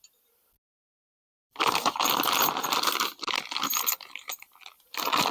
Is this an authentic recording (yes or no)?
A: yes